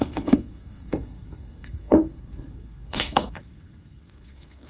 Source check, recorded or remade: remade